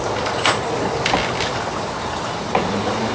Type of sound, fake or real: real